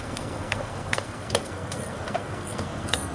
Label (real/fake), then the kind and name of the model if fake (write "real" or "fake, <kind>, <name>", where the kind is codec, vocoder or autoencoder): fake, codec, SNAC